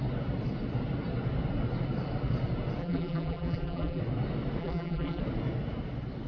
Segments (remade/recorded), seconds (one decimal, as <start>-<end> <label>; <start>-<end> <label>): 0.0-2.8 recorded; 2.8-4.0 remade; 4.0-4.6 recorded; 4.6-5.2 remade; 5.2-6.3 recorded